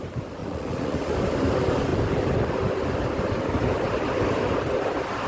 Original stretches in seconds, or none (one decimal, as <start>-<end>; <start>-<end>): 0.0-0.4; 1.1-5.3

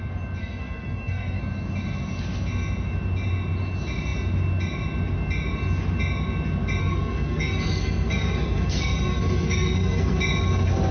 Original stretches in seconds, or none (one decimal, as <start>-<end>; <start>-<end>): 0.0-0.4; 1.4-6.8; 10.2-10.9